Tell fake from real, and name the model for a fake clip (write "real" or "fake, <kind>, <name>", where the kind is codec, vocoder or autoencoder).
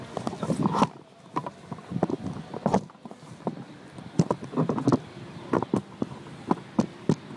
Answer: real